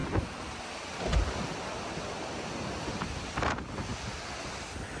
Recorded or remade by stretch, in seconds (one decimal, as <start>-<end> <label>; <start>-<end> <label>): 0.0-3.0 remade; 3.0-3.9 recorded; 3.9-4.6 remade; 4.6-5.0 recorded